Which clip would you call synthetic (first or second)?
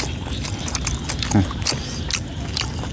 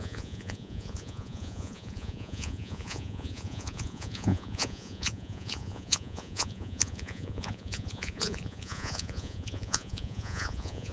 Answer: second